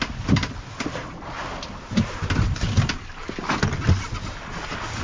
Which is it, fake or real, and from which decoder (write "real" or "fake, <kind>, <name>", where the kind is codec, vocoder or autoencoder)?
real